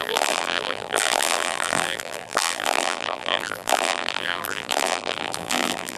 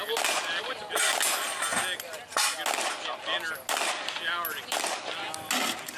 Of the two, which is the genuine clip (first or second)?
second